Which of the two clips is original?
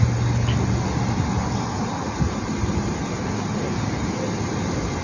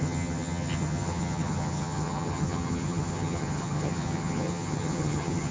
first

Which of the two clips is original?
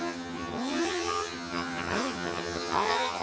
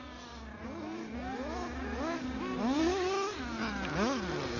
second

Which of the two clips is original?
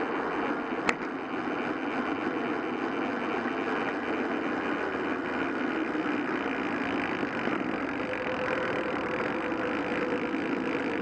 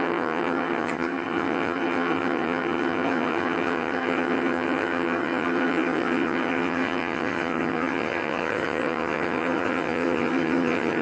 first